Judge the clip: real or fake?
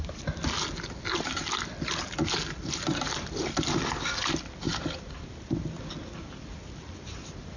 real